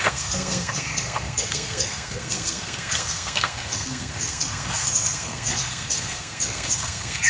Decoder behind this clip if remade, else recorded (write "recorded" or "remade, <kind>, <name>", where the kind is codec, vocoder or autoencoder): remade, codec, SNAC